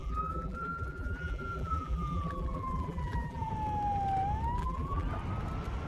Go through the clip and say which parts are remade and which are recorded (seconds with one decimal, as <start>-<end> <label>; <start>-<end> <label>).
0.0-3.5 remade; 3.5-4.6 recorded; 4.6-5.1 remade; 5.1-5.9 recorded